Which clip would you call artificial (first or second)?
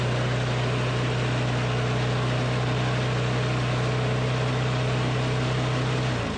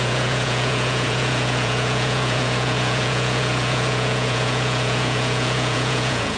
second